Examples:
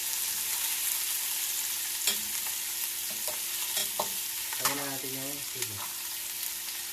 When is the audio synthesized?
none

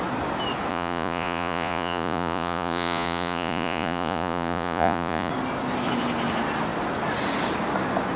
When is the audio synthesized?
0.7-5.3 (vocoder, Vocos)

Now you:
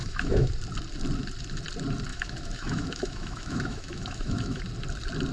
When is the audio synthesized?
0.0-0.5 (autoencoder, DAC-VAE); 2.1-4.6

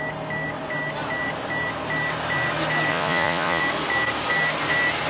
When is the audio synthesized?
2.9-3.6 (vocoder, Vocos)

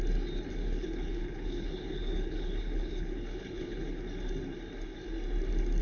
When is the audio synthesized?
0.6-4.0 (codec, HILCodec)

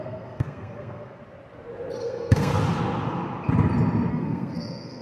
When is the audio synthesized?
0.0-1.2 (codec, SNAC); 2.0-2.5; 4.1-5.0

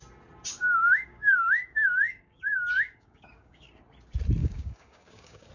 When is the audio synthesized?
0.5-3.8 (codec, DAC); 4.4-5.5